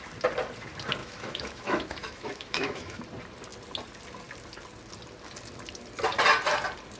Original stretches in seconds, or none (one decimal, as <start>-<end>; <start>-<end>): 0.0-1.0; 3.0-7.0